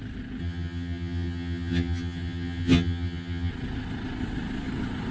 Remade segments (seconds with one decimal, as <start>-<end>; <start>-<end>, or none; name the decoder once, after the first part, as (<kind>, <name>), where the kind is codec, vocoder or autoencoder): 0.4-3.5 (vocoder, HiFi-GAN)